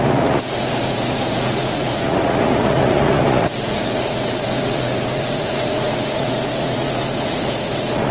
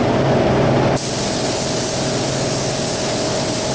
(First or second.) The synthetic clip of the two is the first